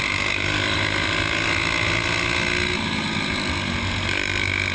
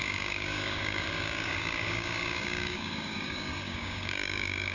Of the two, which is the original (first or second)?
first